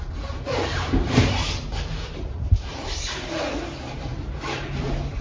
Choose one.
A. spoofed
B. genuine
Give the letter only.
A